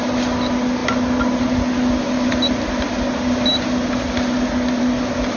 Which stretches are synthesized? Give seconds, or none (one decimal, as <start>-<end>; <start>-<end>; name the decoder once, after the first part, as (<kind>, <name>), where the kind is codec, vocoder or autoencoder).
none